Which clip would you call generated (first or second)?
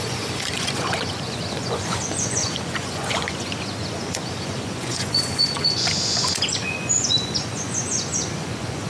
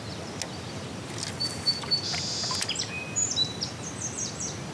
first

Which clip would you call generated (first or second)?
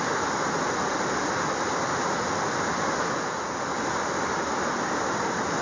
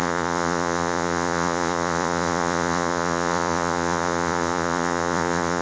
second